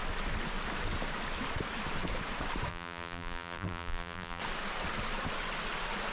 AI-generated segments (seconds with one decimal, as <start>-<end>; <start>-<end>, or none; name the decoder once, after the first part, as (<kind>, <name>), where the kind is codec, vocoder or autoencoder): 2.7-4.4 (vocoder, BigVGAN v2)